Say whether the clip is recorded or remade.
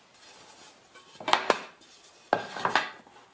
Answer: recorded